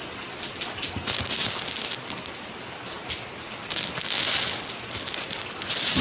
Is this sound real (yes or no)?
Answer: yes